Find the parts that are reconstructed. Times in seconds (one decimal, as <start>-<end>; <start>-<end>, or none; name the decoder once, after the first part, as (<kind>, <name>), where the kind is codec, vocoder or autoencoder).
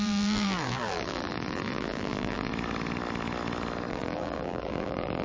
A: 0.0-2.5 (vocoder, BigVGAN v2); 3.9-5.2